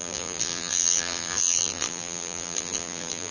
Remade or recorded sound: remade